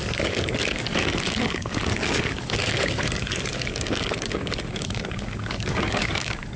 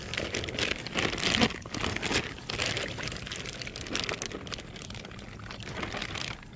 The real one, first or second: second